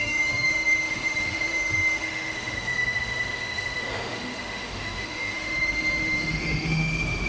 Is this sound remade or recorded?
remade